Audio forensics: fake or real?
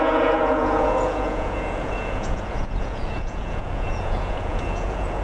fake